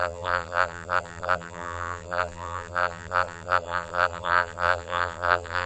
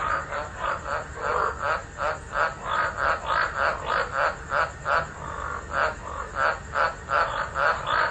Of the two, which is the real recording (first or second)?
second